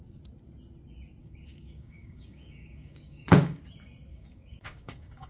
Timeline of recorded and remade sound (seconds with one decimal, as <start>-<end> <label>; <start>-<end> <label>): 0.0-1.2 recorded; 1.2-3.6 remade; 3.6-4.1 recorded; 4.1-5.3 remade